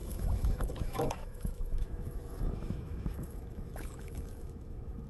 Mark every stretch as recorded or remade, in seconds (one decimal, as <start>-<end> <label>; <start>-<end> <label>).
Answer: 0.0-5.1 remade